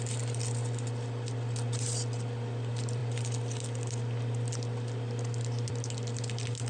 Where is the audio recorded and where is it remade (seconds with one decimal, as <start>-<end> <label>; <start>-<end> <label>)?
0.0-6.7 recorded